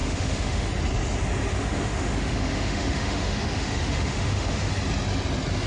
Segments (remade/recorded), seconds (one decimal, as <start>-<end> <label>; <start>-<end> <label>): 0.0-0.7 remade; 0.7-1.5 recorded; 1.5-4.7 remade; 4.7-5.7 recorded

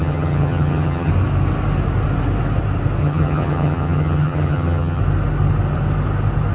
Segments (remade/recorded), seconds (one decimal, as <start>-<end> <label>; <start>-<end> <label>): 0.0-1.1 remade; 1.1-3.0 recorded; 3.0-5.0 remade; 5.0-6.5 recorded